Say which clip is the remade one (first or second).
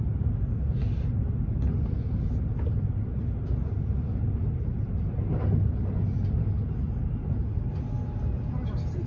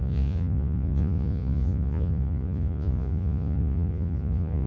second